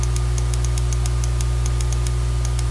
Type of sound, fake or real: real